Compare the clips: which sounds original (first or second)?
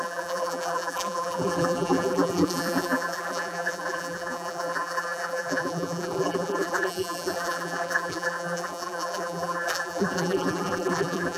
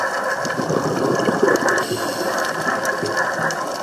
second